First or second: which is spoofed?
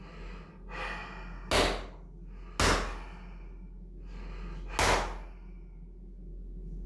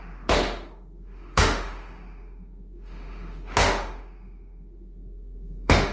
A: second